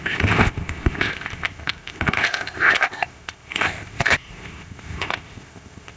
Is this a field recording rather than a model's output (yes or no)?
no